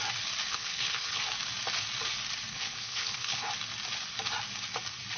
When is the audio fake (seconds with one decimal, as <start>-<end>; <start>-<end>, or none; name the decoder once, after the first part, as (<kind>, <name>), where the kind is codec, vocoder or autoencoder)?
0.5-1.2 (codec, HILCodec); 2.5-3.5